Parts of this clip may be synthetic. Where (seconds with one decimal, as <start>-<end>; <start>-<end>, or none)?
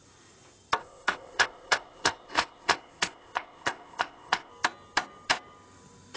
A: 0.8-4.5